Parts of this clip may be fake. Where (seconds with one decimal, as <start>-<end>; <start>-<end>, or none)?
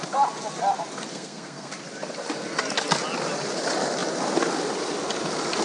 1.1-1.7